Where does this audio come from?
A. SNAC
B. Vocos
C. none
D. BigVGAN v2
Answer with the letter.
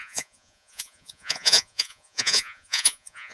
B